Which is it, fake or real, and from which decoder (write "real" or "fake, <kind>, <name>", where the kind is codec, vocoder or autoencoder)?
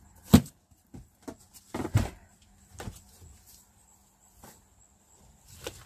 real